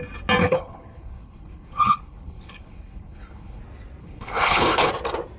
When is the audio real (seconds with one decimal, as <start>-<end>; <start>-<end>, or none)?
0.0-0.4; 3.6-4.0; 4.9-5.4